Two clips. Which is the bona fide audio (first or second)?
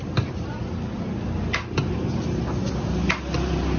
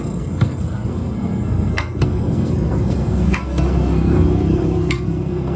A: first